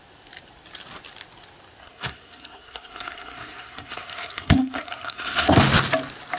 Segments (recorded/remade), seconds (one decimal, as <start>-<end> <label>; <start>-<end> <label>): 0.0-1.8 recorded; 1.8-5.6 remade; 5.6-6.4 recorded